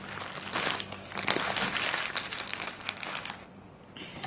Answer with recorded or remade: recorded